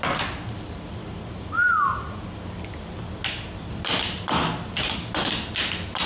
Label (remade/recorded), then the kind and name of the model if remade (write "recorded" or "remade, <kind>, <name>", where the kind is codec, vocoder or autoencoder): recorded